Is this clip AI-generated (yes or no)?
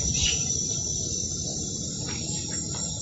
yes